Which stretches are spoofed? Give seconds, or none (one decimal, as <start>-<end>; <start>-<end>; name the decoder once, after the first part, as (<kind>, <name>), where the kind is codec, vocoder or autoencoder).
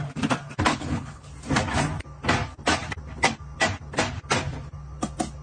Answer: 0.7-1.3 (codec, HILCodec)